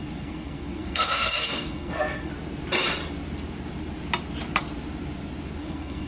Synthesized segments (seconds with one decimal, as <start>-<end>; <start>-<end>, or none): 0.0-2.3; 5.6-6.1